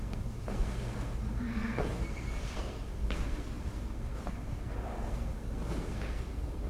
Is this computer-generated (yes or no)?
yes